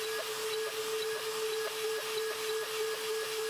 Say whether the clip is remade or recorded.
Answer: recorded